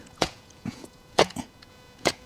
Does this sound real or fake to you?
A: fake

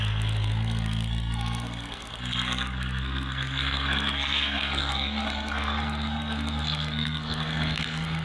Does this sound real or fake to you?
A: fake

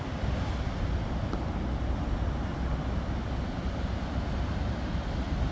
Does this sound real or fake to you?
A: real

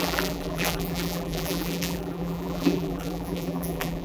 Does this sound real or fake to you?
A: fake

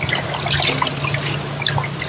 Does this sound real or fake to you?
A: real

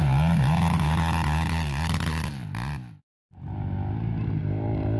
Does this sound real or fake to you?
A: real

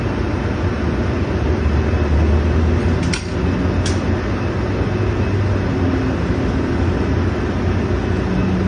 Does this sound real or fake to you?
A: real